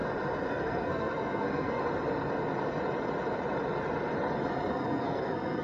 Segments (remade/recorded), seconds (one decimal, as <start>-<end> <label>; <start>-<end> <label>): 0.0-0.5 recorded; 0.5-1.8 remade; 1.8-4.7 recorded; 4.7-5.6 remade